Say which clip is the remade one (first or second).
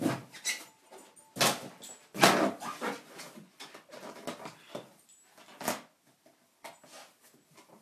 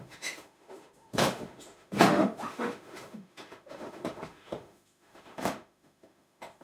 second